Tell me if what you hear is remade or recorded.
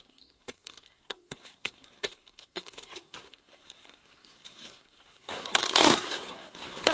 remade